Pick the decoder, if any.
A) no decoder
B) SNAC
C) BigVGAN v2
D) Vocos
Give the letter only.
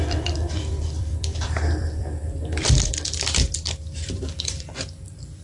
C